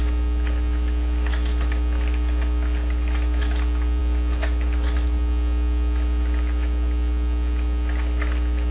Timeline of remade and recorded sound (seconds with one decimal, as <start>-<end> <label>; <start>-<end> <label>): 0.0-8.7 recorded